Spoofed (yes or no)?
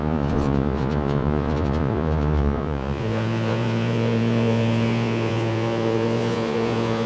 yes